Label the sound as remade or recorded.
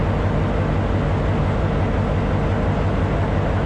recorded